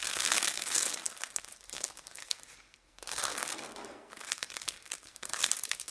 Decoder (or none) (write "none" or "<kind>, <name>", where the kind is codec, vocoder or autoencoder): codec, SNAC